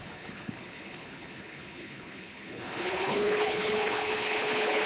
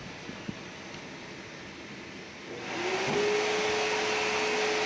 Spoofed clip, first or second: first